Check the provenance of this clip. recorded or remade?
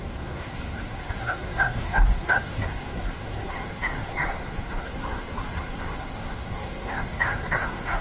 remade